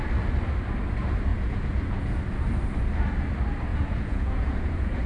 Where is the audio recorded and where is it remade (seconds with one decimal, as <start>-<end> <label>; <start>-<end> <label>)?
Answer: 0.0-1.3 recorded; 1.3-2.2 remade; 2.2-3.7 recorded; 3.7-5.1 remade

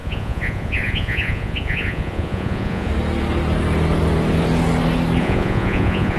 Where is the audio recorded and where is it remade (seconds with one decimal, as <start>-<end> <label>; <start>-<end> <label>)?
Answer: 0.0-2.9 remade; 2.9-5.2 recorded; 5.2-6.2 remade

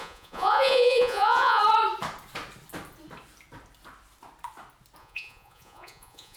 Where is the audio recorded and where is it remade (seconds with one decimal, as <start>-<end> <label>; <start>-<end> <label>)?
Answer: 0.0-1.6 remade; 1.6-5.0 recorded; 5.0-6.4 remade

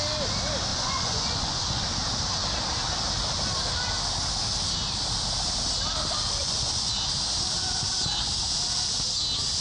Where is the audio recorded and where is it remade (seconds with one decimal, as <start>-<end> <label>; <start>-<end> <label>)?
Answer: 0.0-0.7 recorded; 0.7-1.8 remade; 1.8-6.4 recorded; 6.4-6.9 remade; 6.9-9.6 recorded

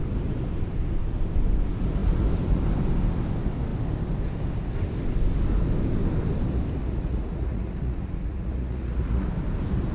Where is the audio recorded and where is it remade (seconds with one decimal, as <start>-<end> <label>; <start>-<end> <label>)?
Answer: 0.0-6.8 recorded; 6.8-9.3 remade; 9.3-9.9 recorded

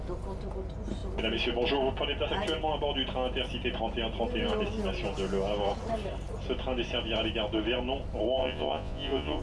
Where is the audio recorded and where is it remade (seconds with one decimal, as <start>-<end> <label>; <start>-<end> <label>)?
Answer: 0.0-8.4 recorded; 8.4-9.4 remade

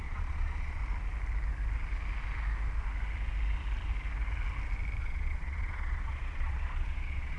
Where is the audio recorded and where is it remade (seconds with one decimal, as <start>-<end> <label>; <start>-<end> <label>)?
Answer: 0.0-0.8 remade; 0.8-5.0 recorded; 5.0-7.4 remade

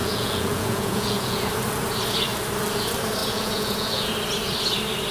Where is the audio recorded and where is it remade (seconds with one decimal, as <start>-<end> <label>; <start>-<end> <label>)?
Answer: 0.0-1.5 remade; 1.5-3.2 recorded; 3.2-4.1 remade; 4.1-5.1 recorded